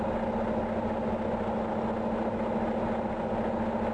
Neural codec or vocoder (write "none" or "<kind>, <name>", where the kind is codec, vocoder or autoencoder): none